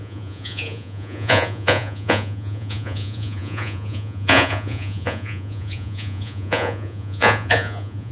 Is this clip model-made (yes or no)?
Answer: yes